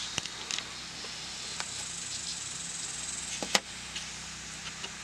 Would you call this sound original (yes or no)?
yes